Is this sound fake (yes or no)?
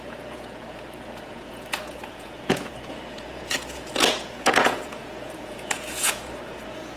yes